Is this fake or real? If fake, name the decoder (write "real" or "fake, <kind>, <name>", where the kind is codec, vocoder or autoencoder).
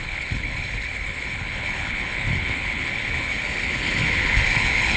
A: fake, codec, HILCodec